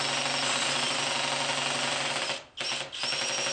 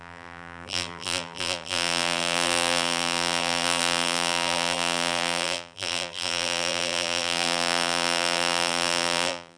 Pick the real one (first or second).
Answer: first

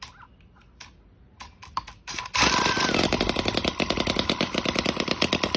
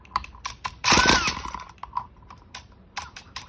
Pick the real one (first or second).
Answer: first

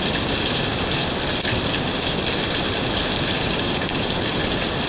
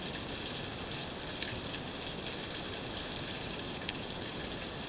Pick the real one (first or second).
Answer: second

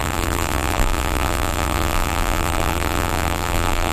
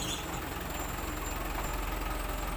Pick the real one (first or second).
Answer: second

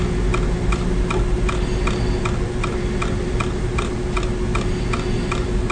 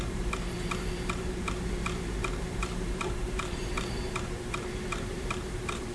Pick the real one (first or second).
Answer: first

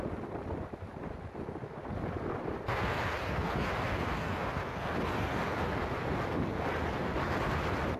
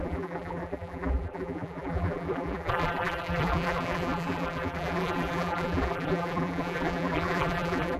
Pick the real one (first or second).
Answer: first